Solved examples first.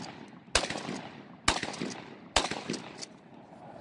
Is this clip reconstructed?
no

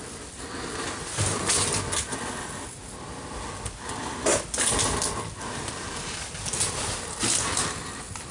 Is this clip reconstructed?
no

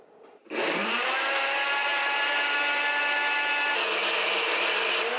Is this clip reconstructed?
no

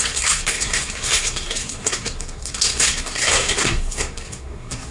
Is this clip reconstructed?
yes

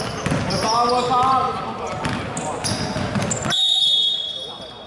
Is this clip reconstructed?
no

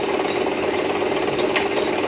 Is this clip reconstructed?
no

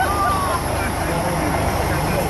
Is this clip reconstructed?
no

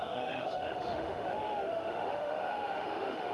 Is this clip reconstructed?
yes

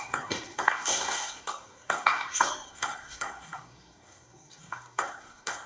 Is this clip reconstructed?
yes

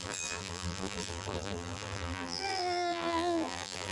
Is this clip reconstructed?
yes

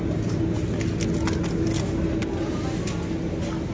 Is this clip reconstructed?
no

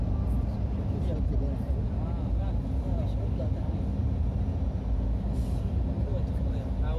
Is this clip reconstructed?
no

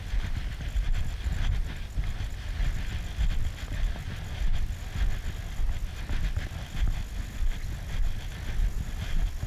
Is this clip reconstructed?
no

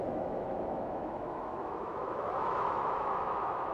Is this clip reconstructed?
yes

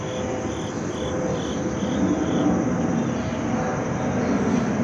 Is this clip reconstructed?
no